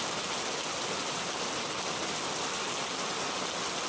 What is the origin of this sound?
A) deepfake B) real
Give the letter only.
B